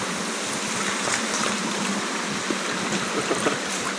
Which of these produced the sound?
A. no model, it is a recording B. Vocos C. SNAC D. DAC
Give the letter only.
A